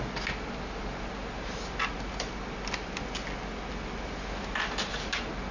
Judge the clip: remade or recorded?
recorded